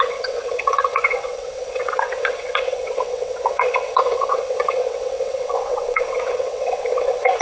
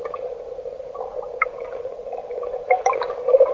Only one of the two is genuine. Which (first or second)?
second